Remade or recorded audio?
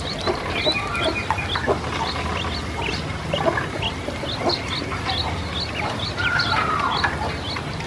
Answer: recorded